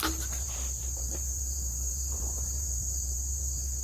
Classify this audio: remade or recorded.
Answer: remade